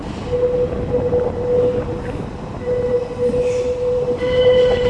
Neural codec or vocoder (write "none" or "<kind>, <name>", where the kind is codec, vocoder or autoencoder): none